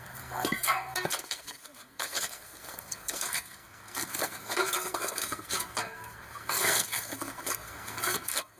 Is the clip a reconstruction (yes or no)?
yes